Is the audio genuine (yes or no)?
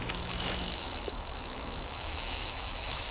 no